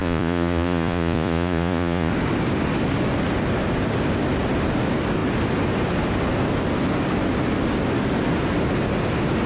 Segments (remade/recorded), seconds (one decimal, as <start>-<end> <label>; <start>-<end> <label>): 0.0-2.1 remade; 2.1-9.5 recorded